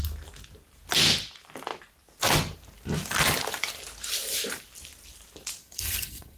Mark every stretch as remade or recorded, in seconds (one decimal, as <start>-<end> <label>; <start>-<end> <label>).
0.0-5.6 recorded; 5.6-6.4 remade